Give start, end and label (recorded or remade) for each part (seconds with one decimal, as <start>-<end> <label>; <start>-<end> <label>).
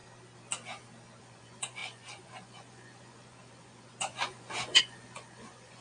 0.0-1.2 recorded; 1.2-5.8 remade